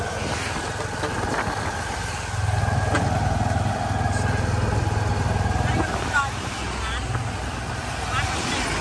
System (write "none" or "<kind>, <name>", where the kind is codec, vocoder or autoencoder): none